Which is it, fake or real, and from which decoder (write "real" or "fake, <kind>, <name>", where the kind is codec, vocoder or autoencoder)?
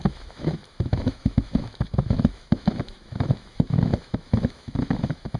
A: fake, autoencoder, DAC-VAE